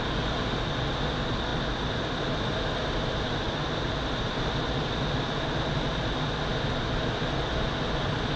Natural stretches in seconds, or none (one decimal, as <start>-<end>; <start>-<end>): 0.0-8.4